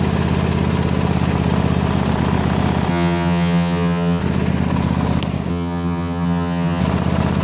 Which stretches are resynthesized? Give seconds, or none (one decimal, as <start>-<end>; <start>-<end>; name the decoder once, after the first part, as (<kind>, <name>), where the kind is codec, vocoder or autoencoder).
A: 2.9-4.2 (vocoder, HiFi-GAN); 5.5-6.8

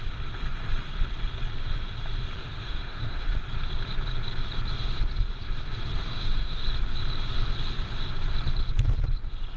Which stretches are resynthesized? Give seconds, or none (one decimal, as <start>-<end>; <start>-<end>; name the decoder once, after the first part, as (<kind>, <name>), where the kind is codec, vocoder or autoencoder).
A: 2.4-3.3 (autoencoder, DAC-VAE); 6.1-6.6

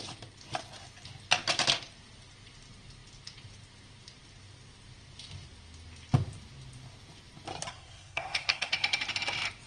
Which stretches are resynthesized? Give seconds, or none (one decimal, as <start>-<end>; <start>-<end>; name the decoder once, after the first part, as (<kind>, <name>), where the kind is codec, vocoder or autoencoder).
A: 7.7-8.7 (codec, SNAC)

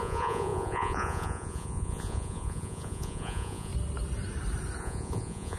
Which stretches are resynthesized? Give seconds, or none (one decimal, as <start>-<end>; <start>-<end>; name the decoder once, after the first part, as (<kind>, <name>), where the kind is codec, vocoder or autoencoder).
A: 0.0-3.7 (vocoder, Vocos); 4.8-5.6